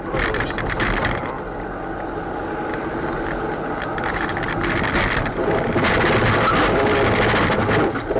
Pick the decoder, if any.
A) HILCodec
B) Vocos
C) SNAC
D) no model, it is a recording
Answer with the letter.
D